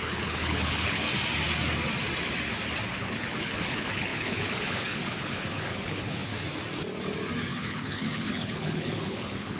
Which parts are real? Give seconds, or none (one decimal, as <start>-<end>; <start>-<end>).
1.0-2.9; 6.3-7.5